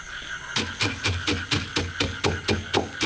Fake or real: real